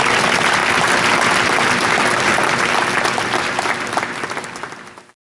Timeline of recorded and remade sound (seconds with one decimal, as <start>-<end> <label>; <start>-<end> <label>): 0.0-5.3 recorded